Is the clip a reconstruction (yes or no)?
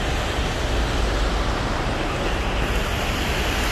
no